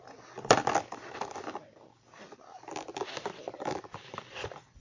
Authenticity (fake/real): fake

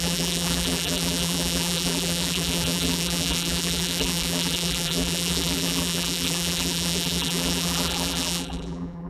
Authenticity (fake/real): fake